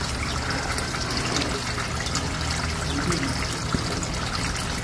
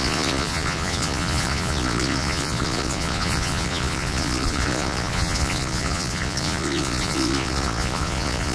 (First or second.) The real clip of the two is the first